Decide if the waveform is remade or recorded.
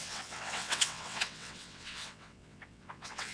remade